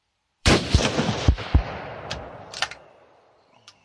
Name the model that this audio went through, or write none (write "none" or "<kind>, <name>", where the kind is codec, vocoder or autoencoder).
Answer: vocoder, BigVGAN v2